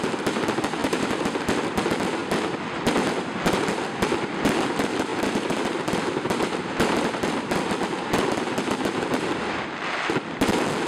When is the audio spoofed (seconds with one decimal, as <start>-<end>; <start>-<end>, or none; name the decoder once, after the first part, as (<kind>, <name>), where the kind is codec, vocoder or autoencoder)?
0.8-1.8 (vocoder, BigVGAN v2); 5.1-10.1